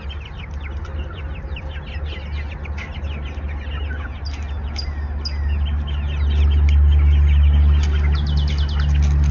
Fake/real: real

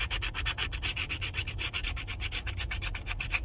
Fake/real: real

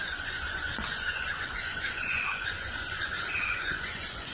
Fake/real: fake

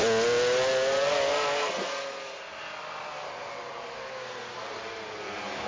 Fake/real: real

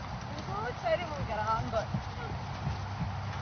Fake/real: real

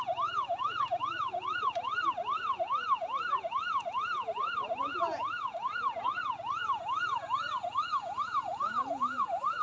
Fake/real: fake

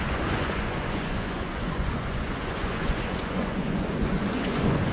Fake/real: fake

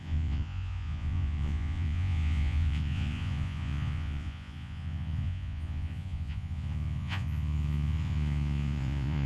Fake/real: fake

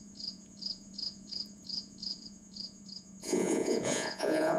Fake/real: fake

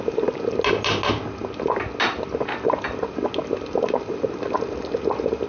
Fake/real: real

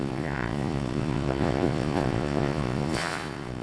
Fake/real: fake